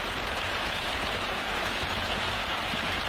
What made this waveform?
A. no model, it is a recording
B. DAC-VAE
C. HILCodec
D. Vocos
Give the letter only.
D